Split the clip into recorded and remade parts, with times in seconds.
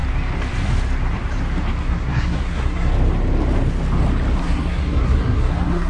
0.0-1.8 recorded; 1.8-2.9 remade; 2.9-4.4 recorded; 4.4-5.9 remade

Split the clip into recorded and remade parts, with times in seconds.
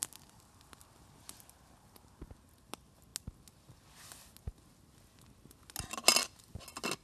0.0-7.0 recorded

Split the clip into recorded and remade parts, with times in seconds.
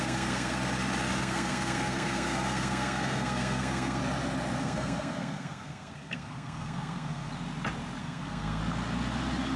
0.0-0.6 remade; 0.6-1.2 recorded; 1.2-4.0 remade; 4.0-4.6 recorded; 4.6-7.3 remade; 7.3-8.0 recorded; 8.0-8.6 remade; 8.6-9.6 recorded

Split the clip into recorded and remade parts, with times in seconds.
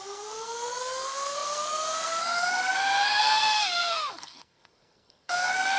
0.0-5.8 remade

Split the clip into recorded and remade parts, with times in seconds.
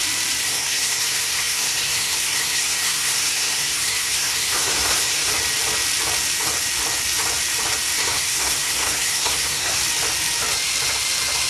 0.0-0.4 recorded; 0.4-5.3 remade; 5.3-8.0 recorded; 8.0-9.8 remade; 9.8-11.5 recorded